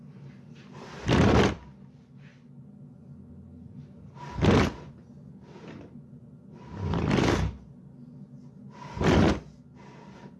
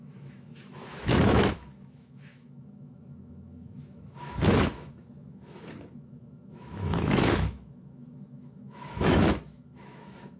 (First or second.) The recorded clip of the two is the first